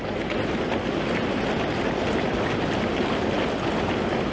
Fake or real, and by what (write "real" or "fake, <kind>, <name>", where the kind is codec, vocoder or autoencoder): real